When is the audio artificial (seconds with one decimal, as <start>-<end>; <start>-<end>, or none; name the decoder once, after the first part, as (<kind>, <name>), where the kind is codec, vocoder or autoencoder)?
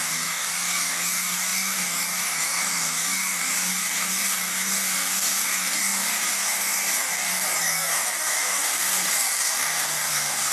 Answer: 0.0-10.5 (codec, DAC)